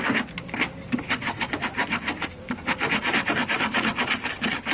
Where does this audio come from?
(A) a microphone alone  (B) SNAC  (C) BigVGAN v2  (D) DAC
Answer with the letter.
A